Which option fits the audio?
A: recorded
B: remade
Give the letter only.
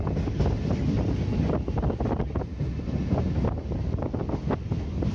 A